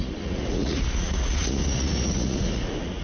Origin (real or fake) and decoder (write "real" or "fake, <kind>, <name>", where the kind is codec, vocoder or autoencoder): fake, vocoder, Vocos